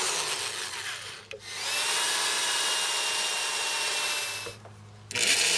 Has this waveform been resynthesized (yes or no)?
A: no